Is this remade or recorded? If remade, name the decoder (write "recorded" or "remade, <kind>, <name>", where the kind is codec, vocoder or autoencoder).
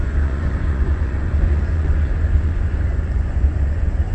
remade, vocoder, Vocos